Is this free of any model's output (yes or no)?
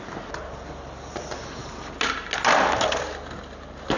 yes